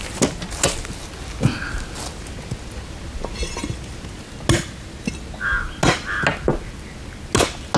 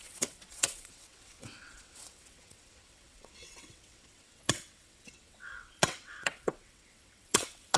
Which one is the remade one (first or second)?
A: second